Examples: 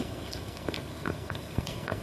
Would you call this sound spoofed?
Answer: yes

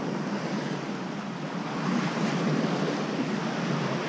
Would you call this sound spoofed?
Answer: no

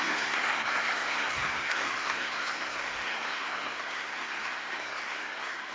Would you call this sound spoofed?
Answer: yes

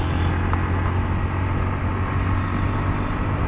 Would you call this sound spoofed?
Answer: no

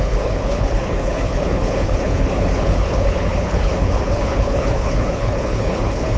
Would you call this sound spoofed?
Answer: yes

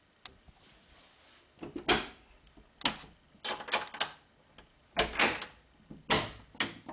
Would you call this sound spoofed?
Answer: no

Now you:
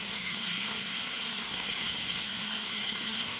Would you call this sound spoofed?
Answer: yes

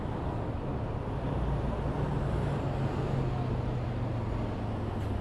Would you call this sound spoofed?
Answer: no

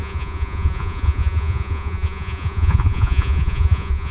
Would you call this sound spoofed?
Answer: yes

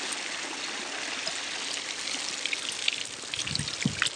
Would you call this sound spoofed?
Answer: no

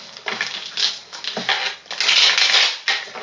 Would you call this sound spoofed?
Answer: no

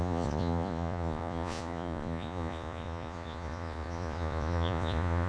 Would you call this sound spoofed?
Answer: yes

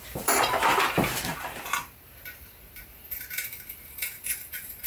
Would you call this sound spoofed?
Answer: yes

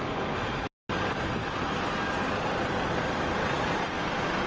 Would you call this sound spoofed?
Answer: no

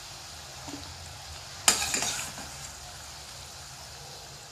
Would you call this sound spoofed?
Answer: no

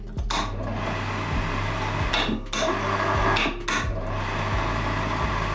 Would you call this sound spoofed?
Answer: no